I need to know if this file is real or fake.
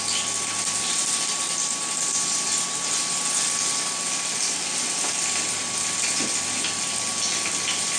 real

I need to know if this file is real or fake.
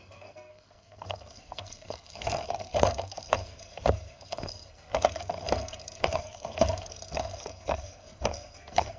fake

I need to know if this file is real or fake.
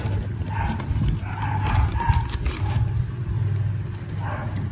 real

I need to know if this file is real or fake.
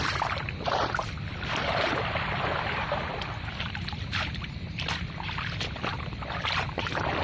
fake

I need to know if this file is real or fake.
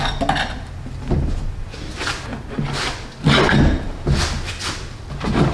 real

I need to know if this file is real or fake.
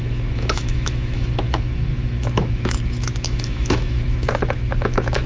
fake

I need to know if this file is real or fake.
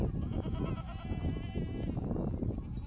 real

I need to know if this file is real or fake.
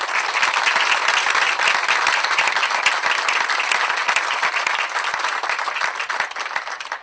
real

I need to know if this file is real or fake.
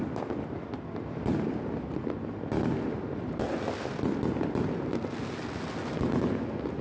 real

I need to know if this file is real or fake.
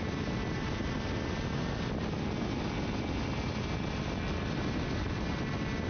real